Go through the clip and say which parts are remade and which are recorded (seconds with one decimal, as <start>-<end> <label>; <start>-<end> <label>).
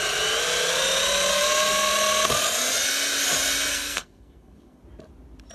0.0-1.3 recorded; 1.3-1.9 remade; 1.9-3.7 recorded; 3.7-4.8 remade; 4.8-5.5 recorded